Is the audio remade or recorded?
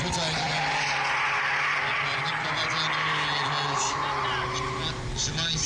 recorded